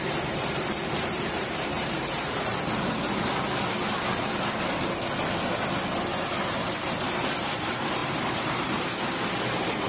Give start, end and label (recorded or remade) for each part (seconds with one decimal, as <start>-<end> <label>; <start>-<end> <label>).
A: 0.0-2.5 remade; 2.5-6.7 recorded; 6.7-9.9 remade